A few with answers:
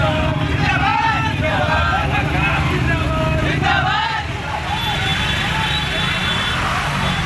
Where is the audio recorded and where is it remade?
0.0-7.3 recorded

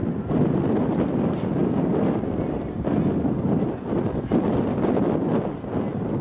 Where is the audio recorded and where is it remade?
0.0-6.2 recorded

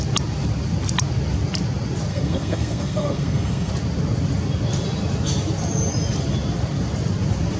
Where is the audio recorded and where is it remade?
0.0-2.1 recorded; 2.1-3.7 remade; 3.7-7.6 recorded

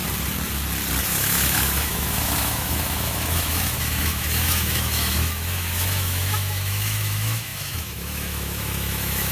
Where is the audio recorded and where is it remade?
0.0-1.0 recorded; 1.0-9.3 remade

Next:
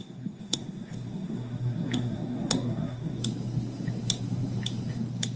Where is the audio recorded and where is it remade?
0.0-3.2 remade; 3.2-5.4 recorded

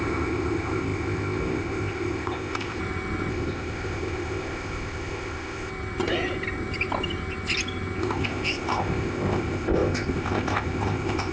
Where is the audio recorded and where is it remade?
0.0-2.8 remade; 2.8-3.3 recorded; 3.3-5.7 remade; 5.7-8.0 recorded; 8.0-11.3 remade

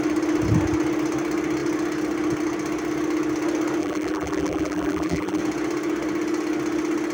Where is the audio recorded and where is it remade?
0.0-3.8 recorded; 3.8-5.4 remade; 5.4-7.1 recorded